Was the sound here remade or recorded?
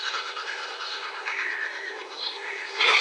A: remade